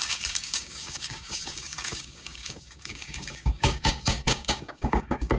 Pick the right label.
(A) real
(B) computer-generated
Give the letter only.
B